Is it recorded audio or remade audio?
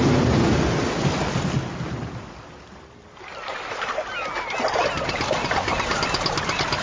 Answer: recorded